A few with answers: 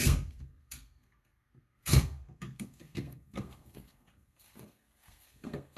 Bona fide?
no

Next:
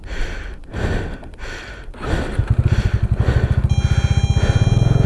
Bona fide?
yes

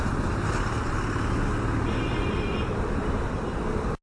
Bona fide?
yes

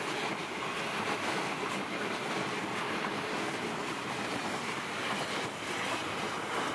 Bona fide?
yes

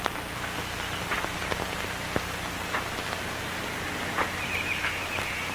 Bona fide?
yes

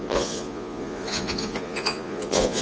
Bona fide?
no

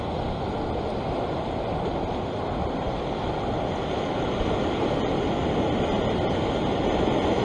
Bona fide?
yes